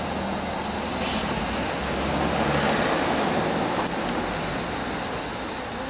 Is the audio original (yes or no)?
yes